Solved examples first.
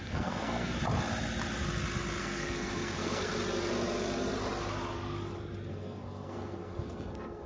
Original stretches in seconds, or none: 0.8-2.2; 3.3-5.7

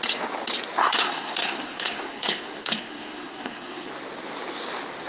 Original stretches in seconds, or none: 0.0-0.8; 3.9-5.1

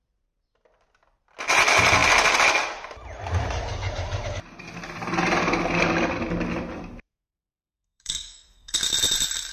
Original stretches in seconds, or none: 0.0-7.1; 8.8-9.5

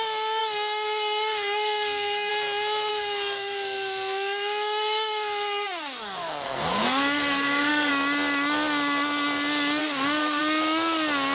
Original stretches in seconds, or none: 0.0-0.4; 2.3-2.9; 7.9-9.8; 10.4-11.3

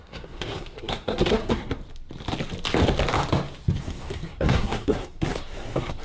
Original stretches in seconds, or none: 1.8-3.8

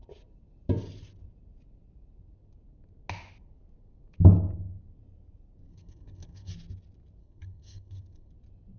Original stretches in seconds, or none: 0.0-5.7; 6.5-7.2; 8.3-8.8

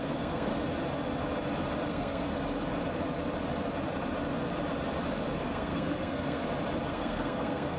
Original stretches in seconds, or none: 0.5-1.9; 2.3-5.4; 6.4-6.9